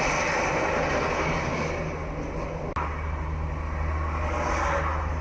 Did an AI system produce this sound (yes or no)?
no